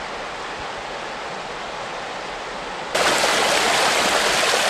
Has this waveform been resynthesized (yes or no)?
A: no